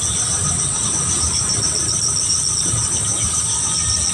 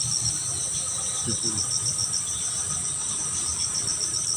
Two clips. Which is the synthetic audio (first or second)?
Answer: first